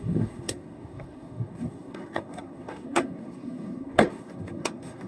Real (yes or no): no